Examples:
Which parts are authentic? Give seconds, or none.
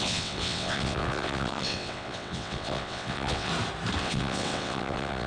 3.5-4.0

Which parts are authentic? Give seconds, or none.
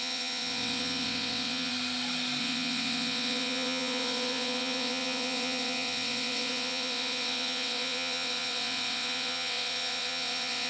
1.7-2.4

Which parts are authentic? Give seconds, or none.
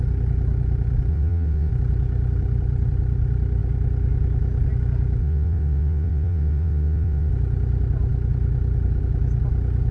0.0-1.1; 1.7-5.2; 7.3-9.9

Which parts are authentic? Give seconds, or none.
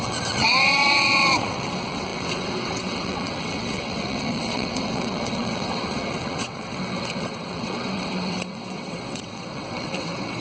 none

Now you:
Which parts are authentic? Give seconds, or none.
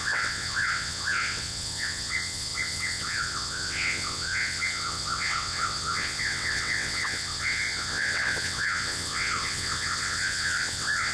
none